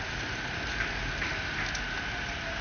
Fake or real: real